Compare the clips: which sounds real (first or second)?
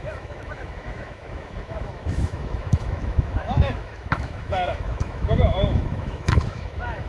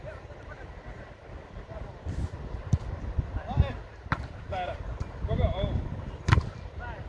second